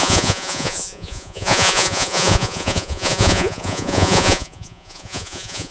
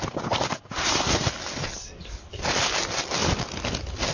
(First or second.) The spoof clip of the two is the first